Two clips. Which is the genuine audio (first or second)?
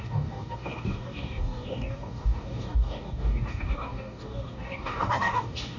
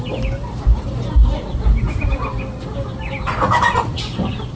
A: second